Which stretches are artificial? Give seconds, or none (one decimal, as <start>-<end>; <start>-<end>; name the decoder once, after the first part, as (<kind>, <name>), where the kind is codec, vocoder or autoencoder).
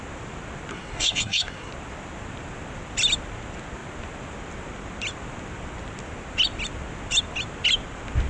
0.7-1.7 (codec, SNAC)